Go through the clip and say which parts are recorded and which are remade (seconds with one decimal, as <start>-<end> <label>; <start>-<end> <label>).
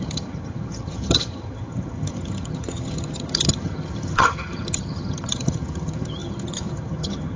0.0-7.4 remade